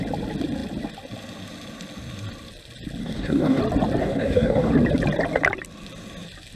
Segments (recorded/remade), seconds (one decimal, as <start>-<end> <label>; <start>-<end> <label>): 0.0-3.0 recorded; 3.0-3.6 remade; 3.6-4.0 recorded; 4.0-4.7 remade; 4.7-6.6 recorded

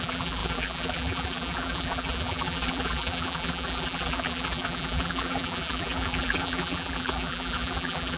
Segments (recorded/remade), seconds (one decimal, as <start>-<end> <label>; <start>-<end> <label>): 0.0-8.2 remade

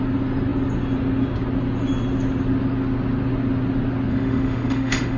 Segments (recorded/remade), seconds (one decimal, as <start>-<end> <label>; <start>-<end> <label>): 0.0-4.1 recorded; 4.1-5.2 remade